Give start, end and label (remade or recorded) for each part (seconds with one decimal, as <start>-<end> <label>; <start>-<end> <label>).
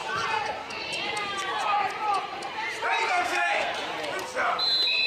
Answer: 0.0-3.1 recorded; 3.1-3.7 remade; 3.7-5.1 recorded